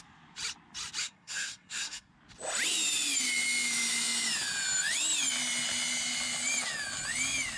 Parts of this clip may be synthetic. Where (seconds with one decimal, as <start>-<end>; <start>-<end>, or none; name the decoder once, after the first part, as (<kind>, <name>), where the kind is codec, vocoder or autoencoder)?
1.0-2.1 (codec, SNAC)